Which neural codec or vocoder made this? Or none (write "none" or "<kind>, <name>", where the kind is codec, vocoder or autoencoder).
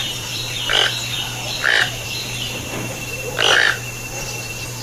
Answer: vocoder, BigVGAN v2